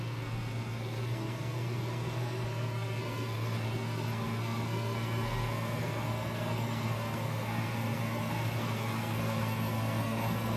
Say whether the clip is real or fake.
fake